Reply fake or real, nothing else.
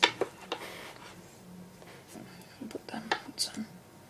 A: real